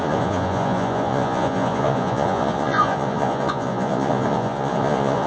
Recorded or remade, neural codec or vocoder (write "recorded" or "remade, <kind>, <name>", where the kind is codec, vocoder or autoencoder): remade, vocoder, Vocos